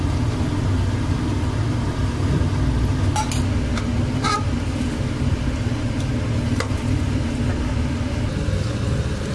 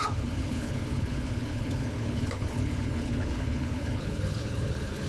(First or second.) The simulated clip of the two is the second